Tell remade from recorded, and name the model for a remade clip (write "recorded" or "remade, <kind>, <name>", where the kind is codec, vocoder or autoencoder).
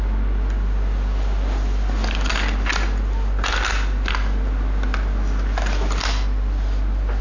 recorded